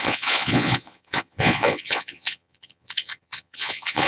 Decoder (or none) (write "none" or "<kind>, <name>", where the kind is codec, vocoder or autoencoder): vocoder, Vocos